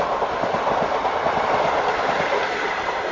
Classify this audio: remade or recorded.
recorded